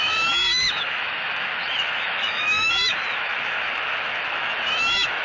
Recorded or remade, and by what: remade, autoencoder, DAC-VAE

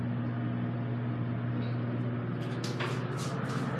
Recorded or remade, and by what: recorded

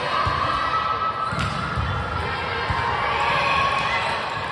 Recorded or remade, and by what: recorded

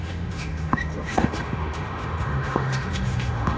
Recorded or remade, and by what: remade, autoencoder, DAC-VAE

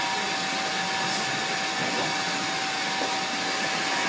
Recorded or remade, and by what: recorded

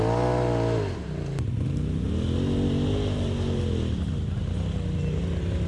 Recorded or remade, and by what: recorded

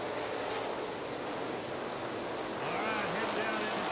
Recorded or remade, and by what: recorded